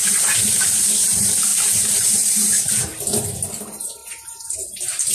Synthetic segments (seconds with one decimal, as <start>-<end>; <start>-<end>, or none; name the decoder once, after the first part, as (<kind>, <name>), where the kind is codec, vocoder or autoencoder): 0.5-2.9 (vocoder, BigVGAN v2); 3.5-5.1